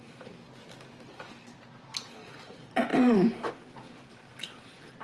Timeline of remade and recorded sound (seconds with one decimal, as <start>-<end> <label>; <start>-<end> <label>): 0.0-2.9 recorded; 2.9-3.5 remade; 3.5-5.0 recorded

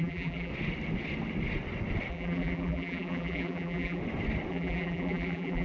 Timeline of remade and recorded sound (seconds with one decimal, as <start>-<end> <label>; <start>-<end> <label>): 0.0-0.5 remade; 0.5-2.1 recorded; 2.1-4.0 remade; 4.0-4.5 recorded; 4.5-5.6 remade

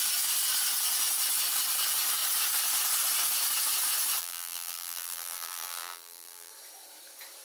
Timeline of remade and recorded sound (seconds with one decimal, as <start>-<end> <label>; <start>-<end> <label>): 0.0-4.2 recorded; 4.2-6.5 remade; 6.5-7.4 recorded